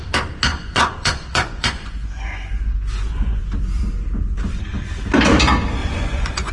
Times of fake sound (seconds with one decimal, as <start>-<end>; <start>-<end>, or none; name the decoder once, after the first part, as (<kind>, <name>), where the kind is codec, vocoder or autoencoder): 0.5-3.5 (vocoder, Vocos); 5.8-6.5